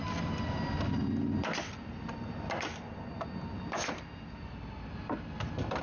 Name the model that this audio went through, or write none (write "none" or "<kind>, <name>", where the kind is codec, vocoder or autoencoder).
none